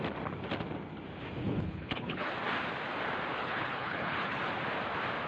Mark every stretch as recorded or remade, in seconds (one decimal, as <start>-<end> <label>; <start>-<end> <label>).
0.0-1.4 recorded; 1.4-2.3 remade; 2.3-3.4 recorded; 3.4-4.4 remade; 4.4-5.3 recorded

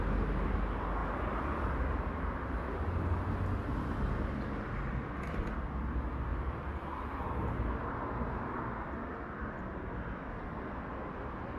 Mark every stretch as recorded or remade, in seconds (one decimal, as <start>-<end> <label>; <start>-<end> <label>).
0.0-11.6 recorded

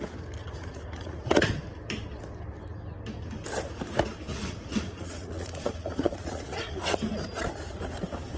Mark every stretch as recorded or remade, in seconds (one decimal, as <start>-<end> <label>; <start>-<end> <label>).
0.0-0.4 recorded; 0.4-1.5 remade; 1.5-4.3 recorded; 4.3-7.0 remade; 7.0-8.4 recorded

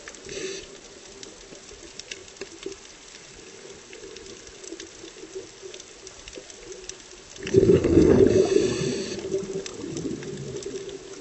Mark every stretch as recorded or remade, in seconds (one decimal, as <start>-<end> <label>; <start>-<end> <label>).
0.0-7.5 recorded; 7.5-8.2 remade; 8.2-11.2 recorded

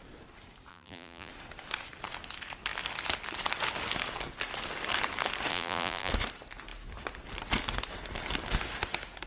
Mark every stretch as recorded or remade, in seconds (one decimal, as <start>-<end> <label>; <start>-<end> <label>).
0.0-0.7 recorded; 0.7-1.3 remade; 1.3-5.5 recorded; 5.5-6.1 remade; 6.1-9.3 recorded